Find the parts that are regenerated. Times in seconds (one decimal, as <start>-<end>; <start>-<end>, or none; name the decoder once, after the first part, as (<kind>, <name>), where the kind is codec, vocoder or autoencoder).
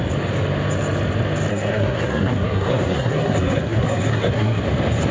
1.5-4.6 (codec, SNAC)